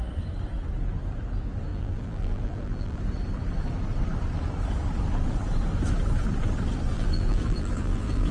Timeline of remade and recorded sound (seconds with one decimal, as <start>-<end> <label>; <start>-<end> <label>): 0.0-1.7 recorded; 1.7-3.0 remade; 3.0-6.9 recorded; 6.9-8.3 remade